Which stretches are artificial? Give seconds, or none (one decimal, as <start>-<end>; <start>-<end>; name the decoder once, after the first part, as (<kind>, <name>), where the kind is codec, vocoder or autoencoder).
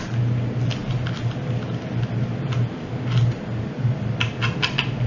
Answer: none